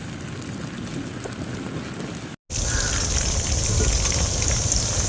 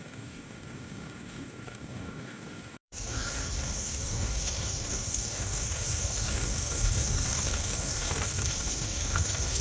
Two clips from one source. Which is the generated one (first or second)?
second